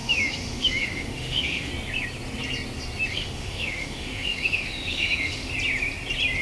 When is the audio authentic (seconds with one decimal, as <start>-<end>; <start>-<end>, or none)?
1.7-3.1; 5.5-6.4